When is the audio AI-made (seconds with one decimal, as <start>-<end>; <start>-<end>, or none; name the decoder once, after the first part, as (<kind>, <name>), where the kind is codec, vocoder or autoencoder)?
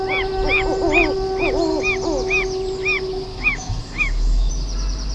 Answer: 3.3-4.5 (autoencoder, DAC-VAE)